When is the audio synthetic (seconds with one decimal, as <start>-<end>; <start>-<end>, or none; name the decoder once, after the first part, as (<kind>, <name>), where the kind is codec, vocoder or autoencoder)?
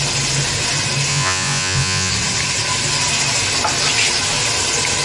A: 1.1-2.1 (vocoder, Vocos)